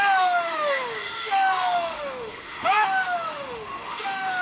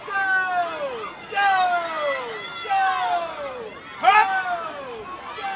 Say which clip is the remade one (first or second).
first